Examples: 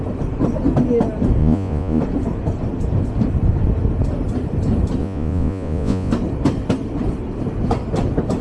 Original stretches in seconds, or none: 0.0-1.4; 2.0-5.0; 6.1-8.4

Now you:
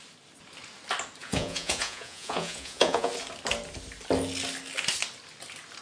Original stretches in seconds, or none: 0.0-1.2; 3.1-5.8

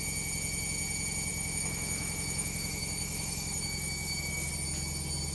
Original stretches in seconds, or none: 0.0-1.3; 4.5-5.3